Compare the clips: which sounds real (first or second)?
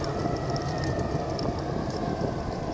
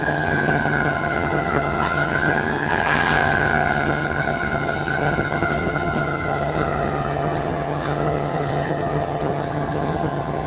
first